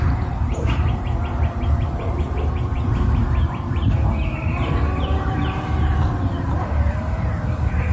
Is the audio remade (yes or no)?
yes